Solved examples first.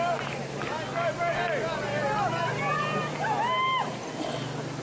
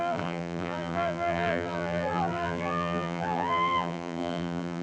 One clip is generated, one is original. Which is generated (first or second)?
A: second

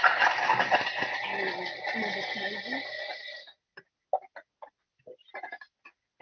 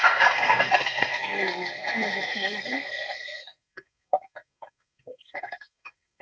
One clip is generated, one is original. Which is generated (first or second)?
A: second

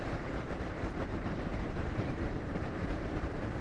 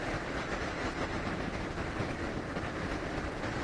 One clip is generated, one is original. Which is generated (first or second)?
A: first